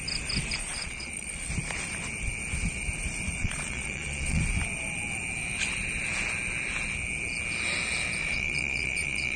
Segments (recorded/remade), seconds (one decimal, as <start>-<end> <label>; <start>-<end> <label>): 0.0-0.6 recorded; 0.6-1.5 remade; 1.5-3.4 recorded; 3.4-4.4 remade; 4.4-8.2 recorded; 8.2-9.4 remade